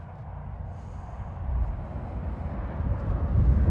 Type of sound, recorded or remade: recorded